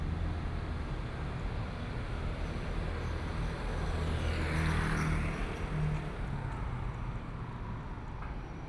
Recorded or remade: recorded